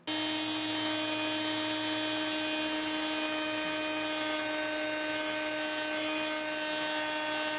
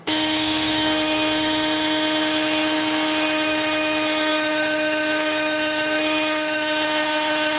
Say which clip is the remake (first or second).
second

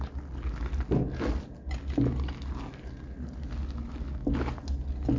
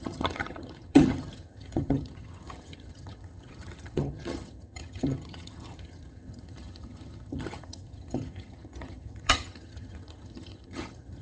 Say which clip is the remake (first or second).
second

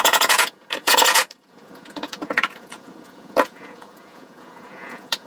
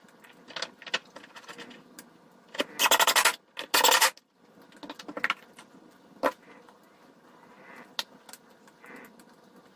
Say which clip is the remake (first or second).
first